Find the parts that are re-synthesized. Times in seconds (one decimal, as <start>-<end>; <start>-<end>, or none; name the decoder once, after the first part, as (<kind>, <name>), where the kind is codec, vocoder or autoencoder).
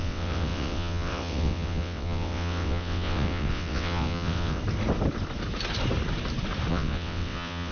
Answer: 0.0-4.6 (vocoder, WaveNeXt); 6.7-7.7